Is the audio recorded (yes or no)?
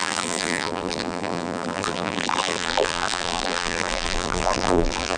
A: no